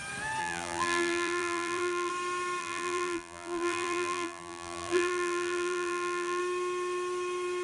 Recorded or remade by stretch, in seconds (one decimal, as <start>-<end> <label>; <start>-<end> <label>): 0.0-0.4 recorded; 0.4-2.1 remade; 2.1-2.6 recorded; 2.6-6.4 remade; 6.4-7.6 recorded